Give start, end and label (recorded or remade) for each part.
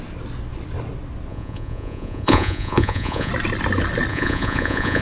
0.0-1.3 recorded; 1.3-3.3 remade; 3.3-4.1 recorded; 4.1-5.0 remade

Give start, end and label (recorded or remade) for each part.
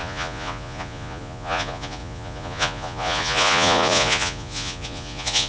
0.0-5.5 remade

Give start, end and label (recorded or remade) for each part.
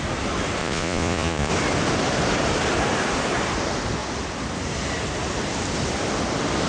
0.0-0.6 recorded; 0.6-1.5 remade; 1.5-6.7 recorded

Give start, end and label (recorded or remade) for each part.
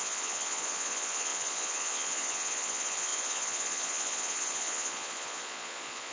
0.0-6.1 remade